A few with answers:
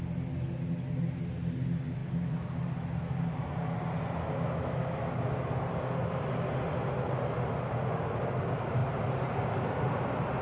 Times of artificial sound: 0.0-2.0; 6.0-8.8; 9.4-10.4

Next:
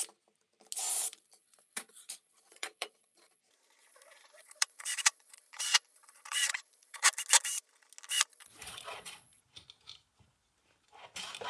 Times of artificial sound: 0.9-3.4; 3.8-7.1; 8.3-9.4

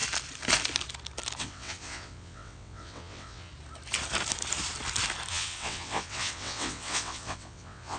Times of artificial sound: 1.4-3.5; 5.3-8.0

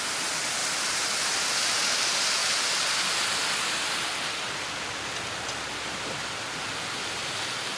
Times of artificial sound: none

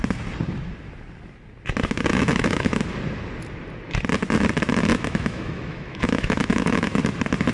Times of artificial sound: 2.1-2.8; 4.9-7.0

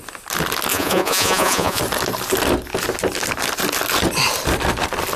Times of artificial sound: 0.7-1.8

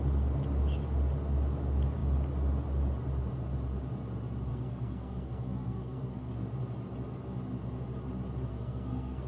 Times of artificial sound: 4.5-6.3; 8.5-9.3